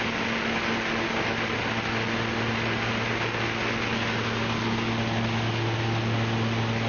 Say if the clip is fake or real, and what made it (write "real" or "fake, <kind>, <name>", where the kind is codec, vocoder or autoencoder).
real